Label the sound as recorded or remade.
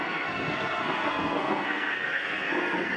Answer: remade